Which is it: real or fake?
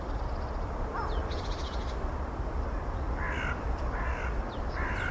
fake